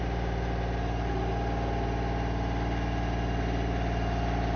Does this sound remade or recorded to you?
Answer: recorded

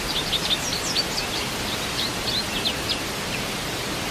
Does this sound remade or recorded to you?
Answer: recorded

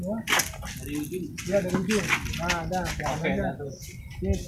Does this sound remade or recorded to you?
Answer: recorded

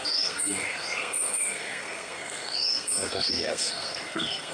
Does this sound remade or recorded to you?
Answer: remade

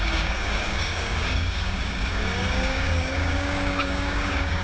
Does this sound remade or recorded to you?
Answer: remade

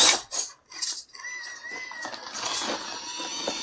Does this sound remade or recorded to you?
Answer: recorded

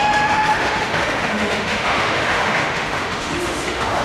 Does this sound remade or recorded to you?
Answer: remade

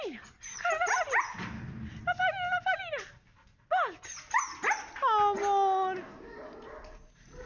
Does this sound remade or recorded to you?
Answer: recorded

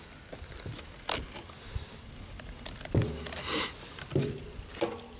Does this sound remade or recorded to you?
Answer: recorded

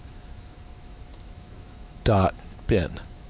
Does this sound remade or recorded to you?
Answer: remade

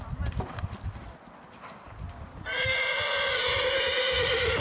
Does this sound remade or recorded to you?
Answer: recorded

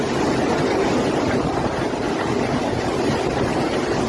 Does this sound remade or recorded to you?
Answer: recorded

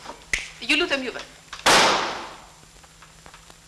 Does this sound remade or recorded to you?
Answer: recorded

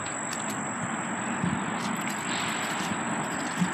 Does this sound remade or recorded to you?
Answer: recorded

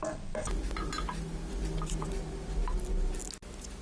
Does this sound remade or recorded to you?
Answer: recorded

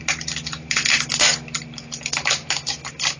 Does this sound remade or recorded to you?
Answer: recorded